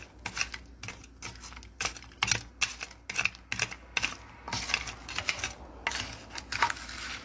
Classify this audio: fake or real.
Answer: real